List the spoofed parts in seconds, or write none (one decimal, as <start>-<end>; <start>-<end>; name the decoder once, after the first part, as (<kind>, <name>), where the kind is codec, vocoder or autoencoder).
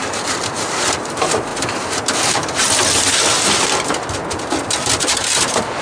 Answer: 0.0-1.5 (vocoder, BigVGAN v2); 5.0-5.8